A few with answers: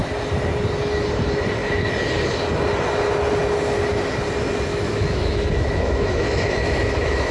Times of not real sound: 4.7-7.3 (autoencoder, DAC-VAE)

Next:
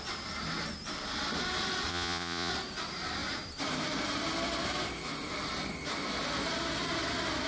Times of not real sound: 1.9-2.5 (vocoder, Vocos)

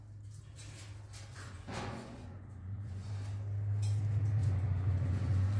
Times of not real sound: 1.3-3.1 (vocoder, Vocos); 4.4-5.6

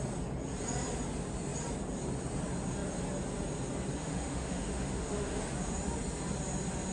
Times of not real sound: 4.0-5.4 (autoencoder, DAC-VAE)

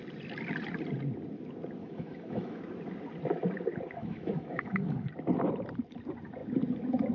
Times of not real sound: 1.8-2.6 (autoencoder, DAC-VAE); 4.0-5.1

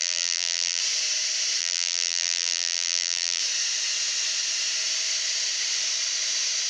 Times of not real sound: 0.0-0.8 (vocoder, BigVGAN v2); 1.6-3.4